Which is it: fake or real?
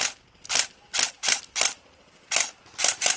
real